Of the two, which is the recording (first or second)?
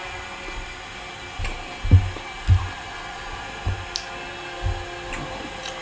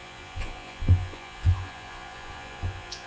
first